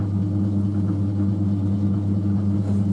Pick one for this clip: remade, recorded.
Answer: recorded